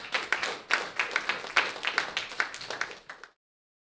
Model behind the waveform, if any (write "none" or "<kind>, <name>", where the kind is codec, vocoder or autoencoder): none